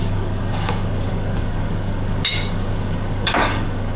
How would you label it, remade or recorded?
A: remade